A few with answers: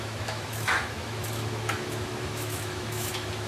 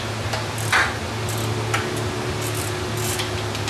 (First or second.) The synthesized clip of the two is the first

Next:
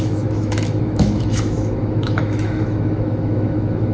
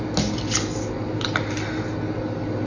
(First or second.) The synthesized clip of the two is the first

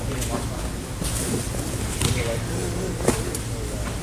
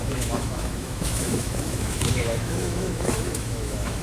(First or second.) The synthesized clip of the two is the second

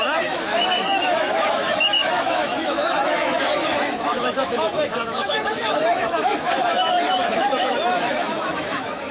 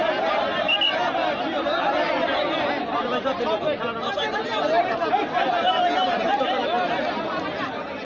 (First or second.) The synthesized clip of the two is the first